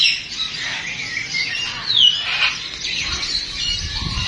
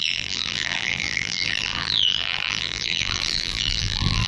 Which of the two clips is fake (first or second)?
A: second